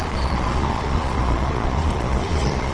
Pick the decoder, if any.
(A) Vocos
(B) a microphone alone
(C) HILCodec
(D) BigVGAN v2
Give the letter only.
A